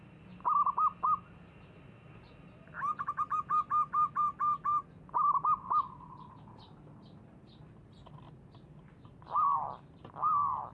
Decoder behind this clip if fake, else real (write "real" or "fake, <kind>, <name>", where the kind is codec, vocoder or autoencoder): real